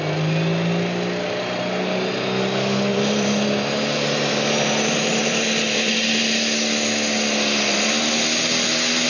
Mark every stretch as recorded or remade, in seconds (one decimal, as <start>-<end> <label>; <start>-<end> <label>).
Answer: 0.0-2.9 recorded; 2.9-6.2 remade; 6.2-9.1 recorded